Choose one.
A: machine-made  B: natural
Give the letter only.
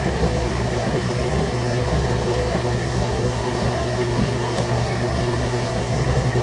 A